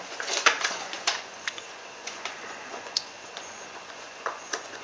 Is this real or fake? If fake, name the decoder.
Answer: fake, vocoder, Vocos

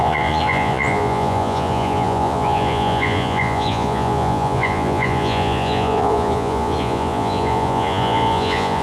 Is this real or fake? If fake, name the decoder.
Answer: fake, vocoder, Vocos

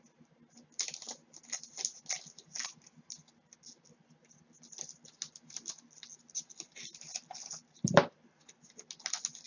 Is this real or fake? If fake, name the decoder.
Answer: real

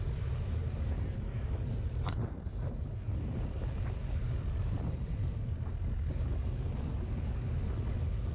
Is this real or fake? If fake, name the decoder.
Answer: real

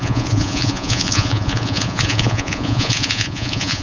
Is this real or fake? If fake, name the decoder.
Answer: fake, vocoder, Vocos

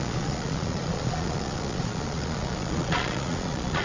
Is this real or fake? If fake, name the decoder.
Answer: fake, vocoder, Vocos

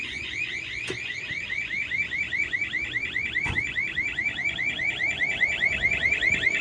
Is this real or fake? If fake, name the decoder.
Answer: fake, vocoder, Vocos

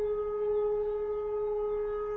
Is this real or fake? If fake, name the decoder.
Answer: real